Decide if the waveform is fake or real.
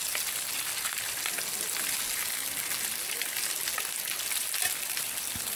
real